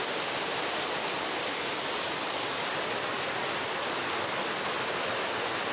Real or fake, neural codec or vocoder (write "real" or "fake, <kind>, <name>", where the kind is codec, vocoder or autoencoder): real